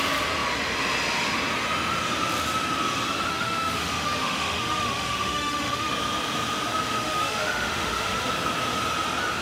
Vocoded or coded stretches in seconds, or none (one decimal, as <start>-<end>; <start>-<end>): 3.3-5.9; 6.7-8.3